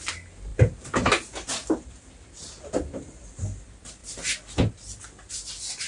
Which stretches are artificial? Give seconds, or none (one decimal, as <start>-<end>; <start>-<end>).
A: none